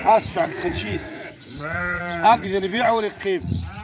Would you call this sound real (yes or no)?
no